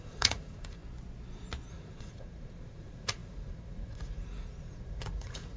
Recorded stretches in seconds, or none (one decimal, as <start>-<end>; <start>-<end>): 0.8-1.7